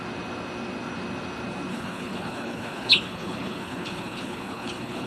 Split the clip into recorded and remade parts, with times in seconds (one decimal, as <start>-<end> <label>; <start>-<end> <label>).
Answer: 0.0-1.7 recorded; 1.7-5.1 remade

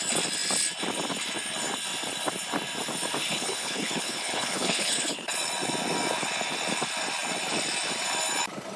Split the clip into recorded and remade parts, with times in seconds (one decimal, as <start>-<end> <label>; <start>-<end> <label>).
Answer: 0.0-3.2 recorded; 3.2-5.3 remade; 5.3-8.8 recorded

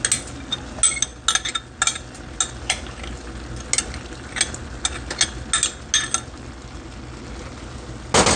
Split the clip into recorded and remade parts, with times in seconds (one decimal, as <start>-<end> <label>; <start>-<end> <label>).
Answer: 0.0-8.4 recorded

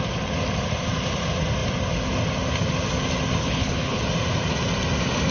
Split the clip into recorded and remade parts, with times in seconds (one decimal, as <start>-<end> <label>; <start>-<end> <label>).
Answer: 0.0-3.4 recorded; 3.4-4.0 remade; 4.0-5.3 recorded